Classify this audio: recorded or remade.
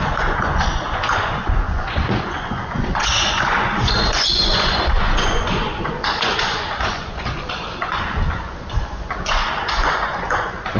remade